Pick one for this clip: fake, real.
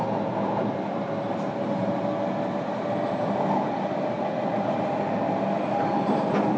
real